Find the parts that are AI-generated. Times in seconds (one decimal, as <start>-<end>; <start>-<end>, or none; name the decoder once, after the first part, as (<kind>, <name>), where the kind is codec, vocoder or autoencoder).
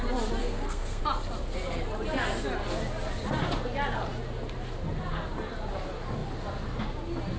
0.4-1.0 (codec, SNAC)